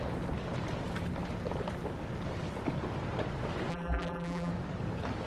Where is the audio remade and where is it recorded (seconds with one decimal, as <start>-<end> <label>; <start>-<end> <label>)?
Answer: 0.0-3.7 recorded; 3.7-4.5 remade; 4.5-5.3 recorded